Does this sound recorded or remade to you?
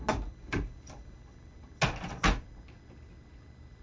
recorded